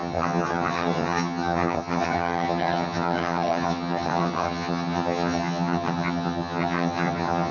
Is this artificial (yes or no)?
yes